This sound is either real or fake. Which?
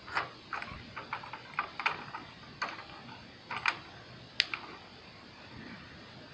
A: real